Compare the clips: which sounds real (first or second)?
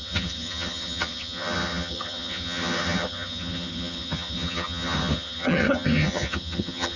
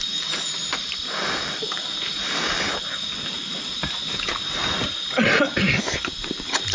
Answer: second